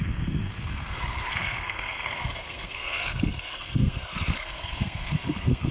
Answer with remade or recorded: remade